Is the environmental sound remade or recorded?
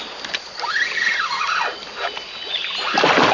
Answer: recorded